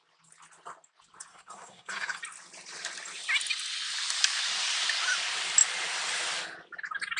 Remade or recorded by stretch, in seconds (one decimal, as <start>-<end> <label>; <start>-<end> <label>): 0.0-1.3 recorded; 1.3-2.2 remade; 2.2-7.2 recorded